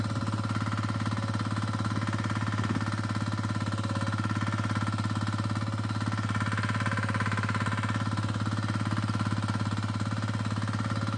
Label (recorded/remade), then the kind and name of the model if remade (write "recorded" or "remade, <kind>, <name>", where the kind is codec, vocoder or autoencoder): recorded